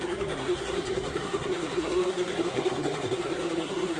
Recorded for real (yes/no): no